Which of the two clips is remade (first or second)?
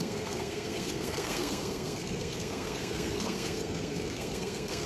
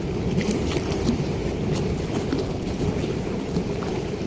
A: first